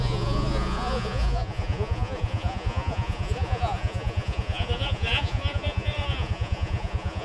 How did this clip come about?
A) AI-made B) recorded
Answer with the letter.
A